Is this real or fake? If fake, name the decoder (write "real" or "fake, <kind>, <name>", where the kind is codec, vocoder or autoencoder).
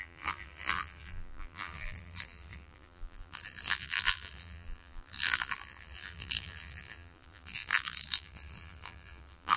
fake, vocoder, BigVGAN v2